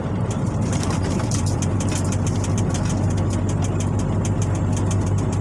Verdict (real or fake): real